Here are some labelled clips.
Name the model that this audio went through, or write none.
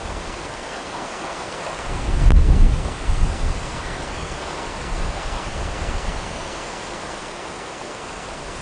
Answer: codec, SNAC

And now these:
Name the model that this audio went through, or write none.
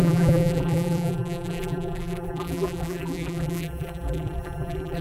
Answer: vocoder, BigVGAN v2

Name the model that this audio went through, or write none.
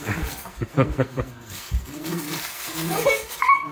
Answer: codec, SNAC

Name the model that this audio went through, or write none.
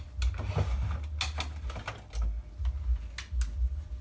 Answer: none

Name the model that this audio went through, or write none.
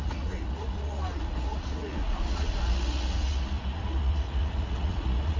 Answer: vocoder, Vocos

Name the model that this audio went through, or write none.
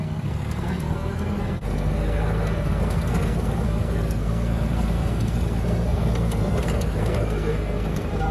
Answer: codec, SNAC